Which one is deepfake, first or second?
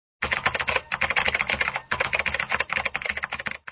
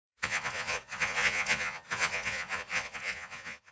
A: second